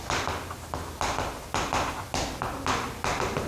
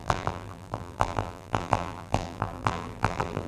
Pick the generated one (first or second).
second